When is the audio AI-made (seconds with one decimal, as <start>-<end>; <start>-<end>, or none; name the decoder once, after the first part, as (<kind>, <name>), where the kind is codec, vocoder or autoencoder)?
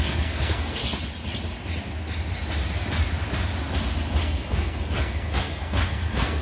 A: 0.0-0.8 (codec, SNAC); 4.2-6.4